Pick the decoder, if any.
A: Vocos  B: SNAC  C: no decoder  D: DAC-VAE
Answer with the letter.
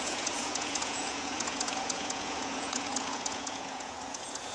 A